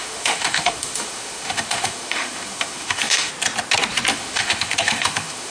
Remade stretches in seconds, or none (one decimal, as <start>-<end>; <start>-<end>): 0.0-3.3; 4.1-5.5